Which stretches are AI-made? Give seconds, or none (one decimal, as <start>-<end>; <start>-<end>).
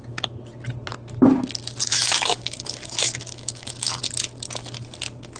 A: 1.9-4.0